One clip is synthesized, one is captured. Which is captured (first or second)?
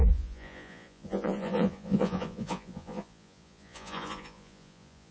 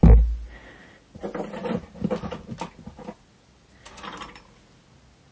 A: second